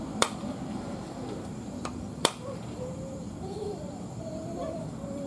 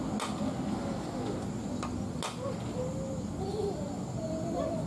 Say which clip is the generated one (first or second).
first